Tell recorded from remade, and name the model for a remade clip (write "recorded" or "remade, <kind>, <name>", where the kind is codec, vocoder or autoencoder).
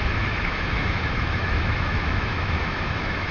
remade, autoencoder, DAC-VAE